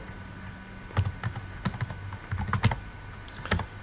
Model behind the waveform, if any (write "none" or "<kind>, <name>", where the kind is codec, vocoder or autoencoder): none